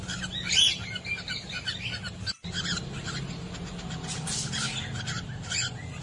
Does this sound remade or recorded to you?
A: recorded